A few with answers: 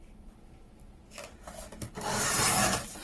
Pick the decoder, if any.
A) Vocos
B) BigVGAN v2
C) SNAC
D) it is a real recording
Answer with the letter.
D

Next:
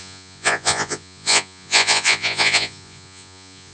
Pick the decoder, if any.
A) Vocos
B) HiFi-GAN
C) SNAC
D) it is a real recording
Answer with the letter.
A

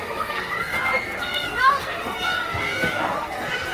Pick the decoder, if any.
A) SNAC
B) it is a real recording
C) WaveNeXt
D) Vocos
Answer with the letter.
A